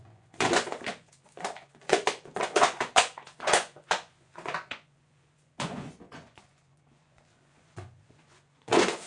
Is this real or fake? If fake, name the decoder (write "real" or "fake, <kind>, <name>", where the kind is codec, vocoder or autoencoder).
fake, vocoder, Vocos